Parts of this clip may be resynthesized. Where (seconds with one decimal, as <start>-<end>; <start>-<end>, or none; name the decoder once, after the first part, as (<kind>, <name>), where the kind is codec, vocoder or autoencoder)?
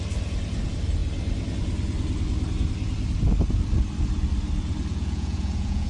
4.9-5.9 (vocoder, Vocos)